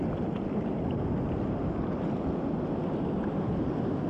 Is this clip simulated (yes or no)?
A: no